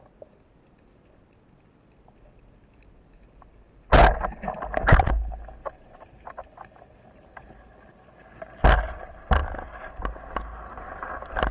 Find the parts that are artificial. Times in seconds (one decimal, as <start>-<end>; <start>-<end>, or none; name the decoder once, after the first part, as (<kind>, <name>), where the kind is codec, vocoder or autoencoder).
none